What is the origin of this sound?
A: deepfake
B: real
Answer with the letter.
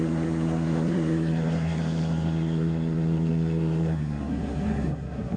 A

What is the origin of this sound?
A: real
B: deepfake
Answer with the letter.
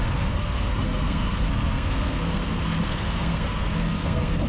B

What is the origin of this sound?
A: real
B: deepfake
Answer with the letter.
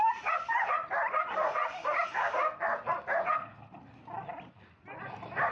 A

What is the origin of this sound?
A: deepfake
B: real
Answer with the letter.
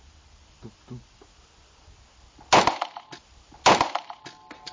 B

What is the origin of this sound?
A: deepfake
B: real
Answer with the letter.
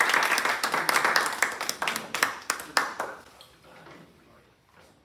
B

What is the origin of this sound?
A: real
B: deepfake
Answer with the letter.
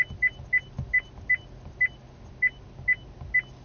A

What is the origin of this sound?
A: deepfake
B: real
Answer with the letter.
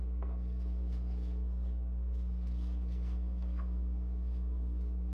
A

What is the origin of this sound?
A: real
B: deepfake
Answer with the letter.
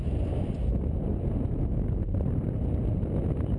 A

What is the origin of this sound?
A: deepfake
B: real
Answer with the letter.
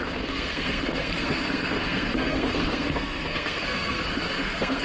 A